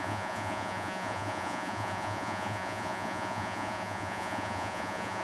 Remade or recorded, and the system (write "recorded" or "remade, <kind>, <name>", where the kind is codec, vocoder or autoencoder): remade, vocoder, Vocos